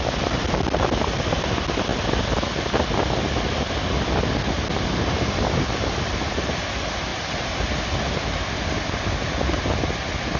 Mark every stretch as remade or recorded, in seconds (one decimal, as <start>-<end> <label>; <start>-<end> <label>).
0.0-10.4 recorded